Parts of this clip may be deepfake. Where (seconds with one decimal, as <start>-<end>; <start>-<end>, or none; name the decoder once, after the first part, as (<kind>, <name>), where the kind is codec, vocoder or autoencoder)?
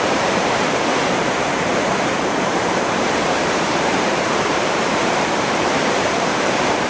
0.0-1.7 (vocoder, BigVGAN v2); 2.4-6.9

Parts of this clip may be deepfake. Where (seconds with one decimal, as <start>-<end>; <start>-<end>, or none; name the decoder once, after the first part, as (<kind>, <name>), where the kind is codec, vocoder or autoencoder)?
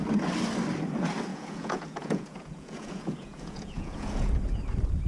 1.3-4.4 (vocoder, Vocos)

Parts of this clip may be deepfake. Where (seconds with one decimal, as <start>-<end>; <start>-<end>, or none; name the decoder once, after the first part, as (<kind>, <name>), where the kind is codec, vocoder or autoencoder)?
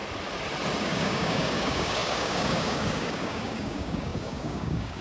0.8-5.0 (codec, DAC)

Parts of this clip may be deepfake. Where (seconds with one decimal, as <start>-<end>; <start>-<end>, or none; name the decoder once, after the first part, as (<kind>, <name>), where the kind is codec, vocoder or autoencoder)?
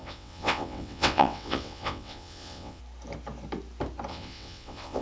0.0-2.8 (vocoder, WaveNeXt); 4.1-5.0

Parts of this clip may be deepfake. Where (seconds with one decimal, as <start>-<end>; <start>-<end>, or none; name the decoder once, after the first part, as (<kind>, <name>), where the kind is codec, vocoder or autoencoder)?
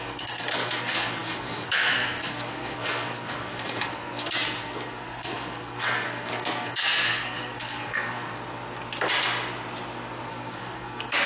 0.0-8.3 (codec, SNAC); 10.3-11.3